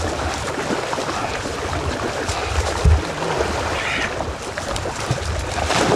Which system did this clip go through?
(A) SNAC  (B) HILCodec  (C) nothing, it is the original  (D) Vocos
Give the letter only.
C